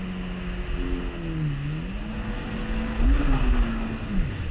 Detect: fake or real real